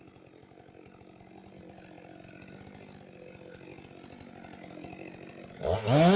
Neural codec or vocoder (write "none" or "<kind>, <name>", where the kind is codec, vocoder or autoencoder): none